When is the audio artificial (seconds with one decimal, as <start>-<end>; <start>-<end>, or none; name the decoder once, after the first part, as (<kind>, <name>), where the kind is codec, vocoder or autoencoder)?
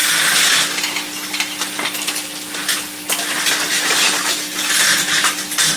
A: none